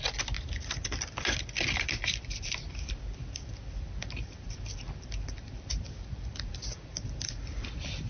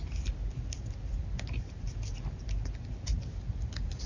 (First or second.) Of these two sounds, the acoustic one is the second